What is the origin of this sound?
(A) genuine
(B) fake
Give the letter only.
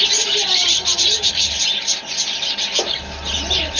B